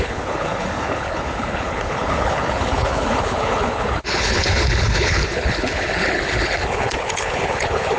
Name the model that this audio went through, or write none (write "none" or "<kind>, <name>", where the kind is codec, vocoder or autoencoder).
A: codec, HILCodec